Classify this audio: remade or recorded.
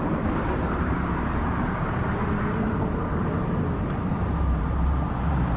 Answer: remade